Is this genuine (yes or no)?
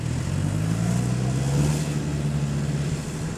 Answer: yes